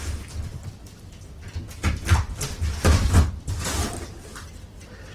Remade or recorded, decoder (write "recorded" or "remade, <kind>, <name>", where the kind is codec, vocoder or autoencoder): recorded